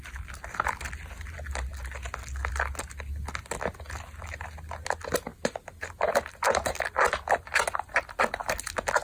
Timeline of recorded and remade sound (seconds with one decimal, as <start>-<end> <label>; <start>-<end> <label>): 0.0-9.0 recorded